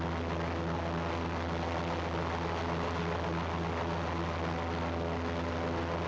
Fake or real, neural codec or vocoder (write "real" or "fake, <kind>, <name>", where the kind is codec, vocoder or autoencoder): real